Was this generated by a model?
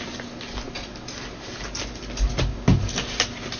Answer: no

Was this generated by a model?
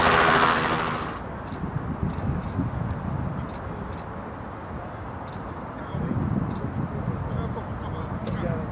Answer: no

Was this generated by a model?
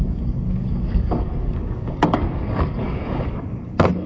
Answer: yes